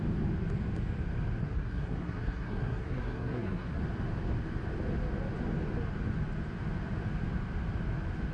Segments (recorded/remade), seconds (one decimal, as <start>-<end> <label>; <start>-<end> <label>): 0.0-1.4 recorded; 1.4-3.8 remade; 3.8-8.3 recorded